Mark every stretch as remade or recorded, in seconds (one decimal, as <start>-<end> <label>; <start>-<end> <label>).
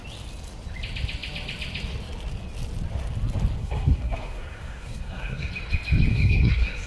0.0-3.6 recorded; 3.6-5.5 remade; 5.5-6.1 recorded; 6.1-6.9 remade